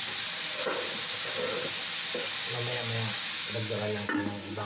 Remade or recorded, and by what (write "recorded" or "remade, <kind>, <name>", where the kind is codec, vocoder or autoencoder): recorded